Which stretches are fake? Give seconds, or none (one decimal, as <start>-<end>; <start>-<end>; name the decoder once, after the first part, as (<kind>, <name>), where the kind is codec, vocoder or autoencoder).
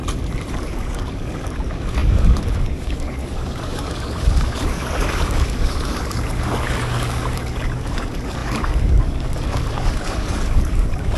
0.5-11.2 (codec, DAC)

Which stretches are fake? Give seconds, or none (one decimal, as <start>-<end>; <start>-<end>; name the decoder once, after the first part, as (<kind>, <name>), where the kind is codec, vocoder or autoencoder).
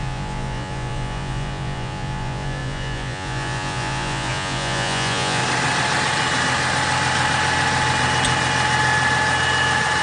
0.0-5.4 (vocoder, Vocos)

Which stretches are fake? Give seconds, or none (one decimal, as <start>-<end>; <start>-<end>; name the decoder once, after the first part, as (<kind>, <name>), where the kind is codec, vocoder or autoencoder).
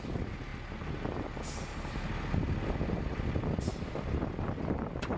0.0-0.5 (vocoder, BigVGAN v2); 3.6-5.2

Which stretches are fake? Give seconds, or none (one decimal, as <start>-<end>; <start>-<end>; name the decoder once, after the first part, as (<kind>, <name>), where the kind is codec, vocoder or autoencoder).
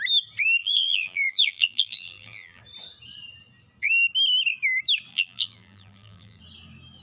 0.6-2.6 (vocoder, BigVGAN v2); 5.1-6.4